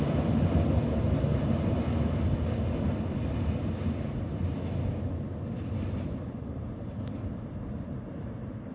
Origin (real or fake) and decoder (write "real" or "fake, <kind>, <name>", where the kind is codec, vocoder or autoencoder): real